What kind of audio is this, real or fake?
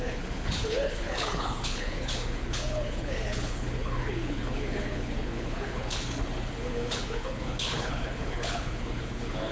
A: fake